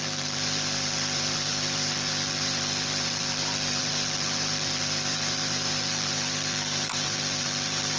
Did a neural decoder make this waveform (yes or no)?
yes